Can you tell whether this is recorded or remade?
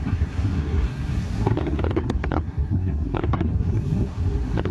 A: remade